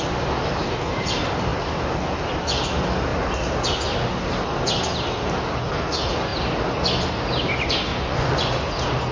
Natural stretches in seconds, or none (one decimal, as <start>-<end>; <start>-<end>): 0.0-7.9; 8.5-9.1